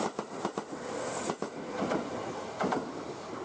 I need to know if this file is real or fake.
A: real